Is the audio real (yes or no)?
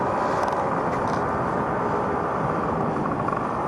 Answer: yes